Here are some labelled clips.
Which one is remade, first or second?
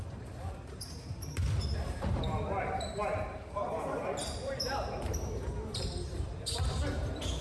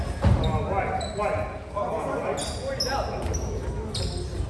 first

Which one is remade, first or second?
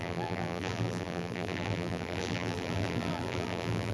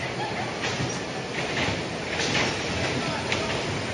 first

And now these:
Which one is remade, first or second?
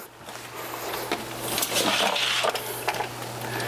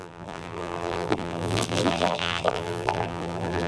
second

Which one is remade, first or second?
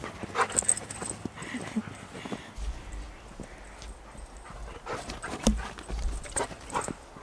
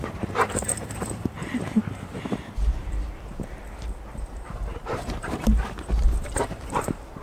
second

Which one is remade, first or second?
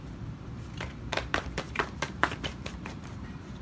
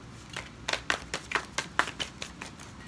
first